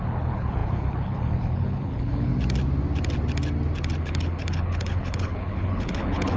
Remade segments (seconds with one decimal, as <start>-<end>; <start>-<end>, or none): 0.0-2.3; 4.0-6.4